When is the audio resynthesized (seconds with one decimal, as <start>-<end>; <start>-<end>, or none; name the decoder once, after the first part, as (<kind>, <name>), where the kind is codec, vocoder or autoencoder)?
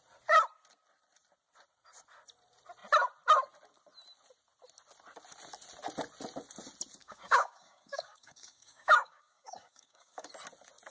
7.0-10.3 (codec, DAC)